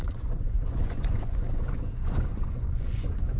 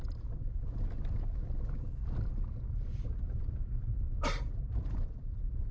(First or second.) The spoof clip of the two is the first